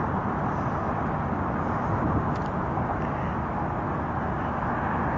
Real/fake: real